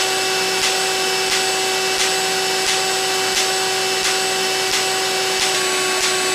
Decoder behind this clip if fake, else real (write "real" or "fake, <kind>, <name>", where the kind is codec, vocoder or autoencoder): real